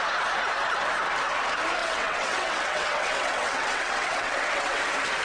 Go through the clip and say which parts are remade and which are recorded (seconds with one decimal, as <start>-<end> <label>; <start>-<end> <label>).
0.0-1.8 recorded; 1.8-4.8 remade; 4.8-5.2 recorded